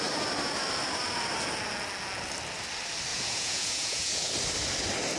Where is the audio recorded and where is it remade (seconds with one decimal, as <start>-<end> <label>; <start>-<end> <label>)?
0.0-3.1 recorded; 3.1-4.3 remade; 4.3-5.2 recorded

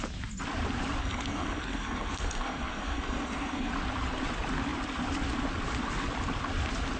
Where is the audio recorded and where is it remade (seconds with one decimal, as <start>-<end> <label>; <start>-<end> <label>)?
0.0-1.0 recorded; 1.0-3.7 remade; 3.7-7.0 recorded

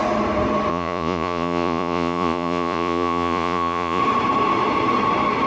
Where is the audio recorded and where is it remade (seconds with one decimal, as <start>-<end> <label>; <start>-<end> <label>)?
0.0-0.7 recorded; 0.7-4.0 remade; 4.0-5.5 recorded

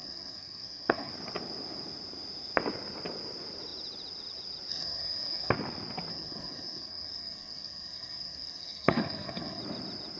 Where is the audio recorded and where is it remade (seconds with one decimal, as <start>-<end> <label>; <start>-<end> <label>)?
0.0-1.1 remade; 1.1-4.7 recorded; 4.7-5.5 remade; 5.5-6.1 recorded; 6.1-9.6 remade; 9.6-10.2 recorded

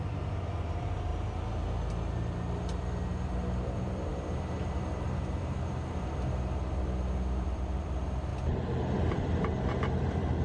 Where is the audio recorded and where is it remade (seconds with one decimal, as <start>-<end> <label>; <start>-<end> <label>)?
0.0-1.1 remade; 1.1-3.1 recorded; 3.1-8.3 remade; 8.3-9.1 recorded; 9.1-10.4 remade